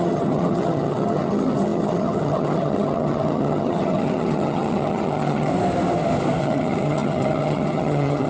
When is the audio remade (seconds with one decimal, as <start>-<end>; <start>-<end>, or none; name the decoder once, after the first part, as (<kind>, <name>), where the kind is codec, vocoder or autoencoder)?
0.0-5.5 (vocoder, HiFi-GAN); 6.4-8.3